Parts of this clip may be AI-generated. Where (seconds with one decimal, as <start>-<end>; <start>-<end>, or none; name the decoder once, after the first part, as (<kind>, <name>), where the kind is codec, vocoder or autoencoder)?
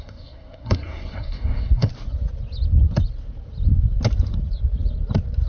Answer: 0.0-1.9 (codec, SNAC)